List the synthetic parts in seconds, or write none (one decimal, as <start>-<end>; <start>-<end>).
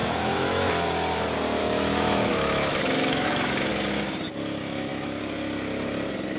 0.0-0.7; 1.6-3.7; 4.6-5.2